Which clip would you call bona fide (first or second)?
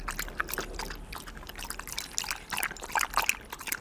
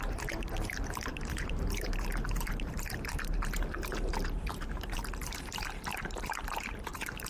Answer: first